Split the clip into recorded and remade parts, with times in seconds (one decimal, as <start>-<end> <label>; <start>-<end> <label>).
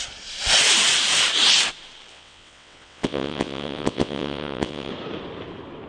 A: 0.0-2.1 recorded; 2.1-4.9 remade; 4.9-5.9 recorded